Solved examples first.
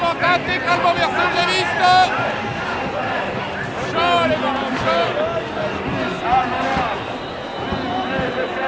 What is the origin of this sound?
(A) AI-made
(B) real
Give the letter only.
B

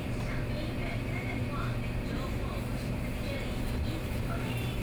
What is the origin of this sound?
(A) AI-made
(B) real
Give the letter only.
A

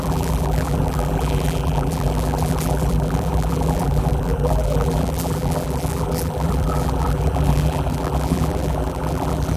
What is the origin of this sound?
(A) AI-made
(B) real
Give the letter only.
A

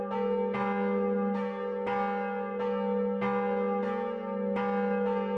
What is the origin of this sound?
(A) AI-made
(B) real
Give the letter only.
B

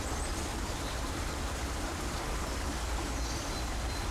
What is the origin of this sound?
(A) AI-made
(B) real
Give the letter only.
A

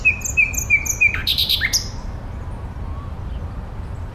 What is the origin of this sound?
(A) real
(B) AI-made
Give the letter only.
A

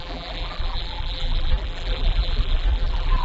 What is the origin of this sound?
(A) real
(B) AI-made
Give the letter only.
B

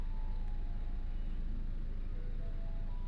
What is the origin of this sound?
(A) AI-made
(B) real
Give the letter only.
B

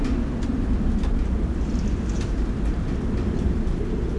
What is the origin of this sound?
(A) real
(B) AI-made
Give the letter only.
A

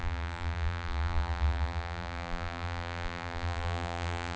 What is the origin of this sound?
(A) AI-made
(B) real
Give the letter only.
A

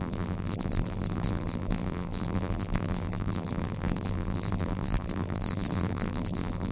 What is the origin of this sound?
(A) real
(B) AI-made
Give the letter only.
B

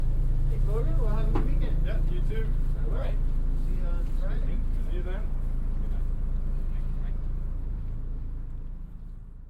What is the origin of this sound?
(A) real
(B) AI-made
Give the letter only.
B